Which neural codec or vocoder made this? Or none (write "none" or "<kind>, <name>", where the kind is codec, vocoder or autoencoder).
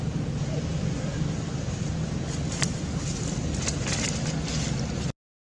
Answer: none